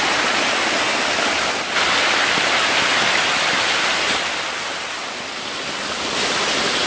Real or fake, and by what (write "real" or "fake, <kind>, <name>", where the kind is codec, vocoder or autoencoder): real